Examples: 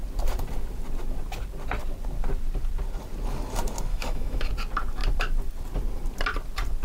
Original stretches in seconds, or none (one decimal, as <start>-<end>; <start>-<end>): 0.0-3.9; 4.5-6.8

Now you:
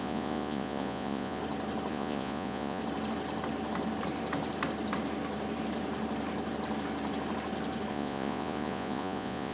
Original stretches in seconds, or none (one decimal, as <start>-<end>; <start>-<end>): 1.4-1.9; 2.8-7.9

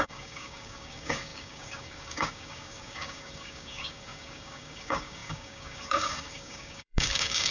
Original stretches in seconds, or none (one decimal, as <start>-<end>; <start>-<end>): none